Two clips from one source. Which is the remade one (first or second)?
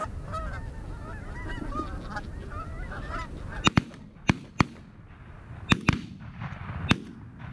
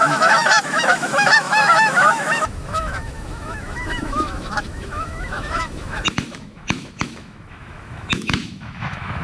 second